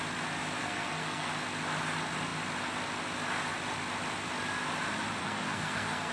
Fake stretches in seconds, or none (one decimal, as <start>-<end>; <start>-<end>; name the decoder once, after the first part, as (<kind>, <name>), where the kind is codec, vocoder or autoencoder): 0.6-1.3 (codec, SNAC); 5.2-6.1